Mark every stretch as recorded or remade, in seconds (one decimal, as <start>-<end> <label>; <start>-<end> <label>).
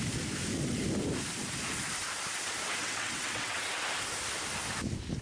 0.0-2.8 recorded; 2.8-3.7 remade; 3.7-5.2 recorded